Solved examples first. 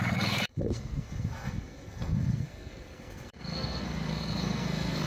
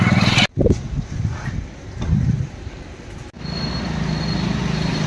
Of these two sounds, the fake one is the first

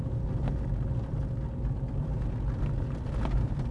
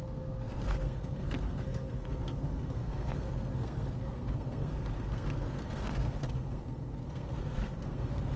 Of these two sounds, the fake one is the second